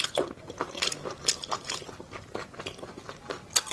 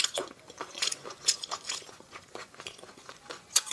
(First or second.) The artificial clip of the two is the second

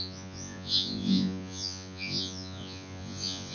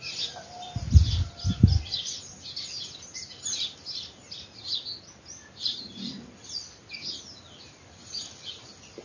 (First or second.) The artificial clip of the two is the first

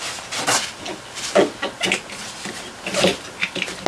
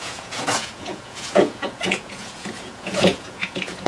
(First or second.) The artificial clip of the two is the second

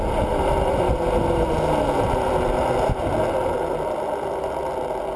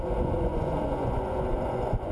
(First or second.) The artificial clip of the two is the second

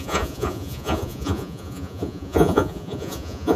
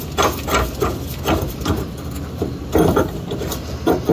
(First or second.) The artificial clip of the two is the first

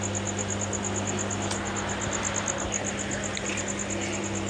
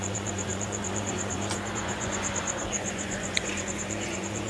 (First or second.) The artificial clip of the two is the second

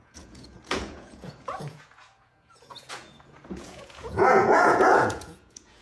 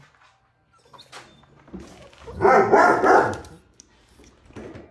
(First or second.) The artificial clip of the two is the first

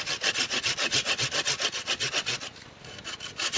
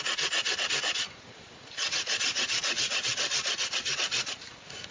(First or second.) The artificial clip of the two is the second